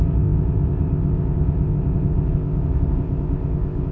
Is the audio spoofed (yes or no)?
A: yes